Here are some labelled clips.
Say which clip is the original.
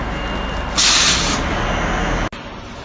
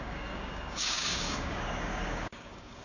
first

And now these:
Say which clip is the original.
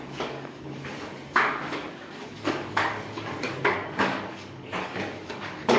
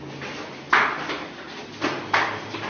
second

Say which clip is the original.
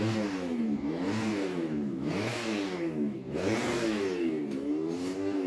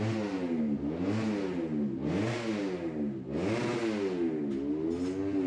second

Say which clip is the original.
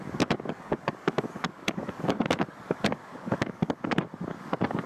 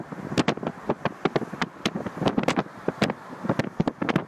second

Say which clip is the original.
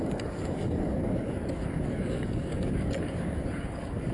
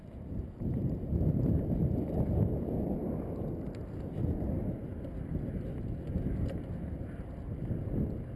second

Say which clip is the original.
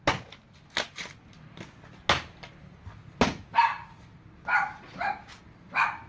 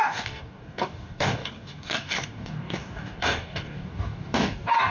first